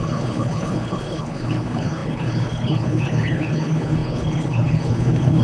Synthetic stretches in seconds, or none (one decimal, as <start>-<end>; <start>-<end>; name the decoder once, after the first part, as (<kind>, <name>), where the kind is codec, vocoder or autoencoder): 0.0-5.4 (codec, HILCodec)